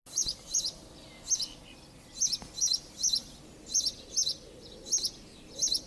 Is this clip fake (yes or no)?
no